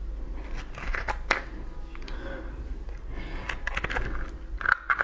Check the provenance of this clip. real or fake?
real